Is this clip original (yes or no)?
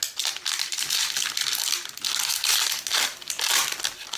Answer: yes